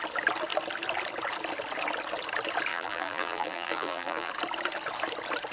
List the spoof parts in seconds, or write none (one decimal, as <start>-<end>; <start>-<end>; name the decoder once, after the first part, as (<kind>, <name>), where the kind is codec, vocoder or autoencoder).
2.7-4.3 (vocoder, BigVGAN v2)